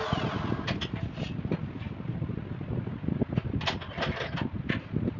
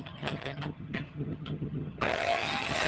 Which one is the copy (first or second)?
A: second